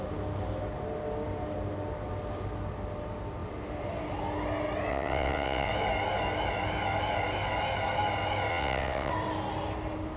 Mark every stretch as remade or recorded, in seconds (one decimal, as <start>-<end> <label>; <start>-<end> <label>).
0.0-4.9 recorded; 4.9-5.7 remade; 5.7-8.5 recorded; 8.5-9.1 remade; 9.1-10.2 recorded